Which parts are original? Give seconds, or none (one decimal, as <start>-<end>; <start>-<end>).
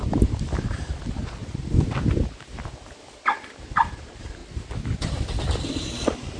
1.2-3.0; 4.4-5.7